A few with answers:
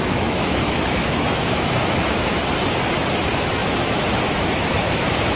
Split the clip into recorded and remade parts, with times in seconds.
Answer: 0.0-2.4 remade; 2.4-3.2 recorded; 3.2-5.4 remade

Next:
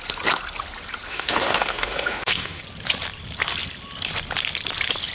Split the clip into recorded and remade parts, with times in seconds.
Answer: 0.0-1.1 recorded; 1.1-2.6 remade; 2.6-5.1 recorded